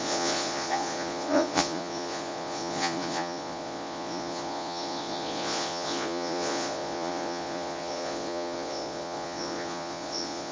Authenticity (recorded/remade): remade